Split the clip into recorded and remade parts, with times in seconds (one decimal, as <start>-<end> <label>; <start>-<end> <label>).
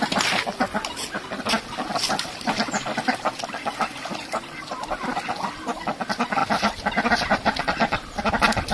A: 0.0-8.7 recorded